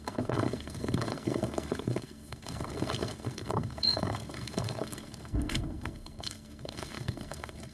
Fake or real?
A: fake